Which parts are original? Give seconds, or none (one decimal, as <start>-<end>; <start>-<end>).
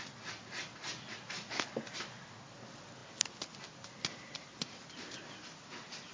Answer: 0.0-6.1